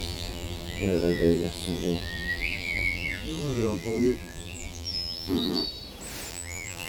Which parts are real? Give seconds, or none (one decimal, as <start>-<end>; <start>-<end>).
5.6-6.3